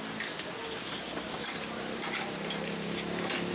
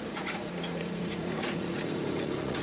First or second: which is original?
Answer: first